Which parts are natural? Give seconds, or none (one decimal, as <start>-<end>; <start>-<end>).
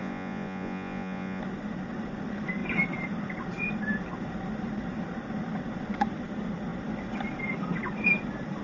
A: 1.4-8.6